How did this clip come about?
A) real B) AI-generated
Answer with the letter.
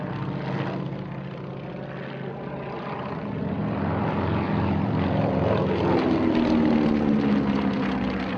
A